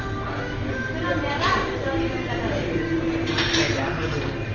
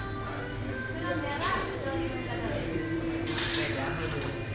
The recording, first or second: second